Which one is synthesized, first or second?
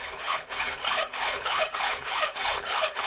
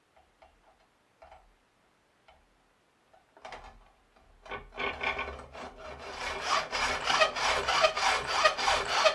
first